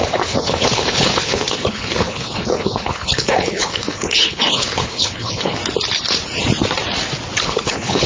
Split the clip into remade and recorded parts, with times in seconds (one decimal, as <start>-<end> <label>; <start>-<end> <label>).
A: 0.0-5.6 remade; 5.6-7.4 recorded; 7.4-8.1 remade